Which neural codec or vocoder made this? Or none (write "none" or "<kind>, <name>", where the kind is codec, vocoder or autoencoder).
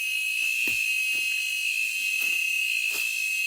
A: none